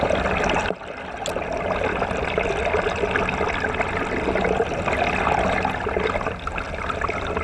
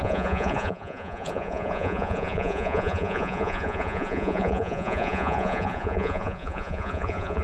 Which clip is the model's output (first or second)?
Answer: second